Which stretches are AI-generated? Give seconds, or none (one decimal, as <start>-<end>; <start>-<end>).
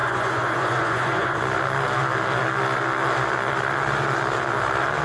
0.0-1.4